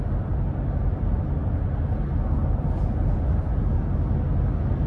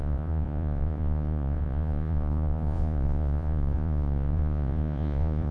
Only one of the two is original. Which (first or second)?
first